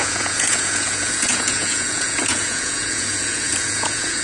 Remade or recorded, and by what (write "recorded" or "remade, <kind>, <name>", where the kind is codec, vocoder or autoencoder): remade, vocoder, Vocos